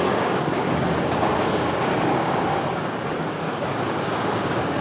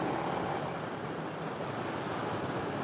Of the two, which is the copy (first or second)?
first